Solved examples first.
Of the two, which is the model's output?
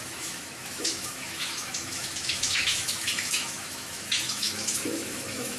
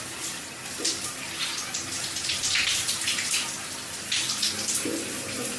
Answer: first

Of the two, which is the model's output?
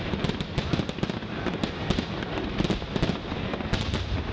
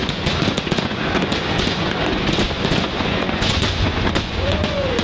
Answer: second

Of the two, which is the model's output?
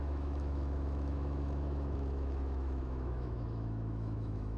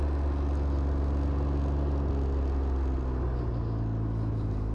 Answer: first